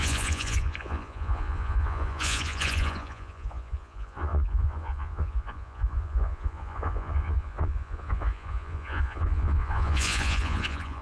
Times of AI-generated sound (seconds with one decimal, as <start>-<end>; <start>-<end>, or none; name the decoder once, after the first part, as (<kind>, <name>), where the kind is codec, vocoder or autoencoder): 0.0-11.0 (vocoder, Vocos)